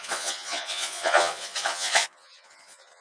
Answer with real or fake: fake